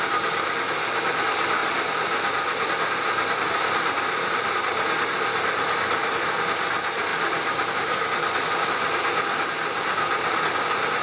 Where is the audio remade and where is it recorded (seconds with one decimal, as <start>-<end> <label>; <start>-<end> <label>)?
0.0-1.6 recorded; 1.6-4.5 remade; 4.5-7.1 recorded; 7.1-7.7 remade; 7.7-11.0 recorded